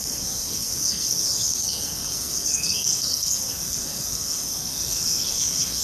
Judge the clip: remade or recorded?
remade